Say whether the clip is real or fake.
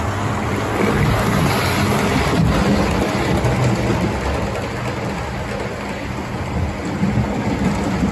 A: real